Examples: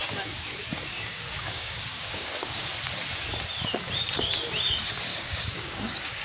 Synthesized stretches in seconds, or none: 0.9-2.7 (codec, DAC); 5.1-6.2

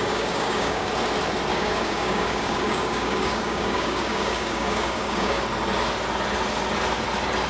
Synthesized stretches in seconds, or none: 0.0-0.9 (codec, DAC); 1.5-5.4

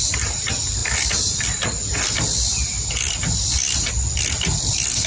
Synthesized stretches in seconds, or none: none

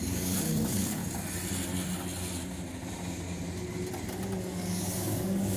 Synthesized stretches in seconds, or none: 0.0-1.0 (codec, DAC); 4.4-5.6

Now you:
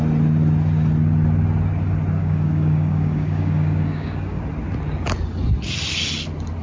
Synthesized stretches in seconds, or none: 2.2-4.4 (codec, DAC)